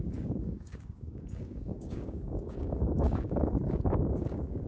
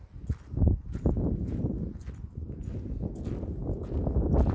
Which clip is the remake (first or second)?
first